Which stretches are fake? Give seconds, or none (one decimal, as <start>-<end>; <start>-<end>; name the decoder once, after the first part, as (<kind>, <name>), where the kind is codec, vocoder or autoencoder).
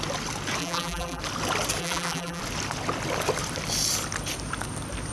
0.6-1.2 (vocoder, BigVGAN v2); 1.8-2.4